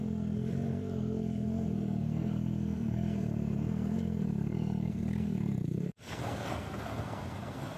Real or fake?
fake